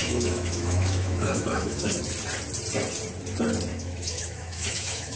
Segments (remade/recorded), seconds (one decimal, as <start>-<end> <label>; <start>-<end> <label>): 0.0-2.0 remade; 2.0-3.7 recorded; 3.7-5.2 remade

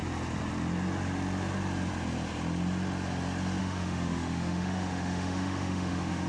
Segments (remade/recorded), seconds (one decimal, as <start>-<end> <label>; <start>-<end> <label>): 0.0-3.6 recorded; 3.6-6.3 remade

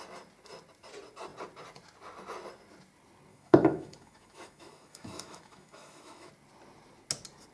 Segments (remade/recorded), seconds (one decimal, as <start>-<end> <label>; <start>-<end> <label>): 0.0-3.3 recorded; 3.3-6.3 remade; 6.3-7.5 recorded

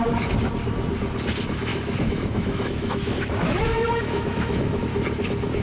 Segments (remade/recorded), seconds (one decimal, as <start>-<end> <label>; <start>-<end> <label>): 0.0-1.7 recorded; 1.7-4.8 remade; 4.8-5.6 recorded